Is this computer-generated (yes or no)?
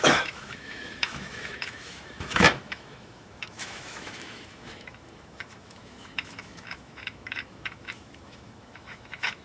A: yes